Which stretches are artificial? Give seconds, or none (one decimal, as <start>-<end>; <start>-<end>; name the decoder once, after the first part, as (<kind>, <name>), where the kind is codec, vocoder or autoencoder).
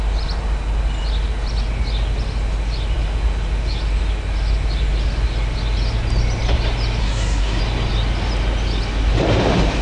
7.0-7.6 (codec, SNAC)